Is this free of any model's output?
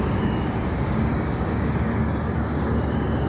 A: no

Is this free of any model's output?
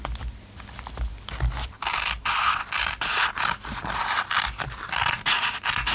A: yes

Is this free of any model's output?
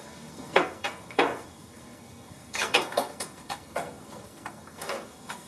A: no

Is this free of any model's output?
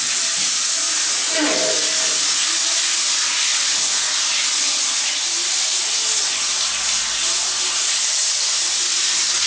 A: yes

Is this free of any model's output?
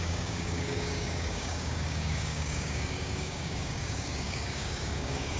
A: no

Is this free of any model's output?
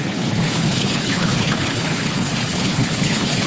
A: no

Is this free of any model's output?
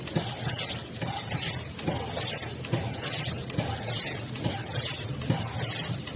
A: yes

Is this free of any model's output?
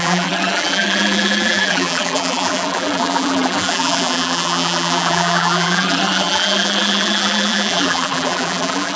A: no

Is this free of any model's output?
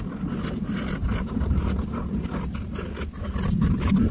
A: no